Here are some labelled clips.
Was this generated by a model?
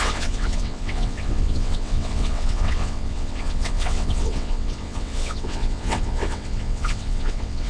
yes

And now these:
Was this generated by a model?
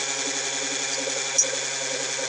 no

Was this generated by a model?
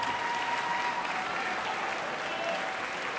no